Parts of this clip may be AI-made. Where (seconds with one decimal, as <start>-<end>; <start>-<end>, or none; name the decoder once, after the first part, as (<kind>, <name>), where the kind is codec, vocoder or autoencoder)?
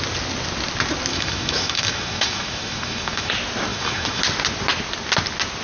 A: 1.1-3.3 (autoencoder, DAC-VAE); 3.7-4.2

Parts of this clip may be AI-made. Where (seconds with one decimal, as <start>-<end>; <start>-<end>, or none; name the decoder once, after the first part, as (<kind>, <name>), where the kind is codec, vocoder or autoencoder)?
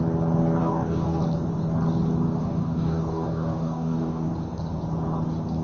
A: 0.6-1.2 (codec, DAC); 2.4-4.3